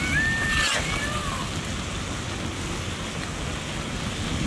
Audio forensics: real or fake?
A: real